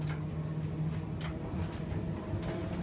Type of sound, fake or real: real